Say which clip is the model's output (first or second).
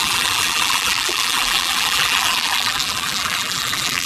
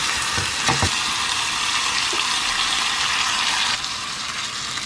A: first